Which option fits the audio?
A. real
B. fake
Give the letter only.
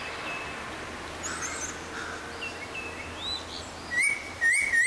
A